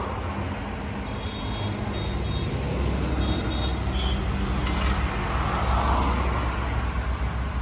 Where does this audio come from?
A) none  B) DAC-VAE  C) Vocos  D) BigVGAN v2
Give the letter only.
A